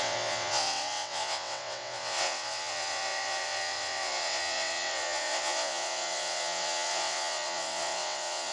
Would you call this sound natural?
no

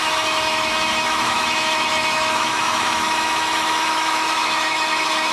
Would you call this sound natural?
no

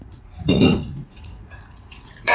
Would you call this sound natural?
no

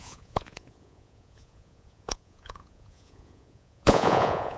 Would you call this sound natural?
no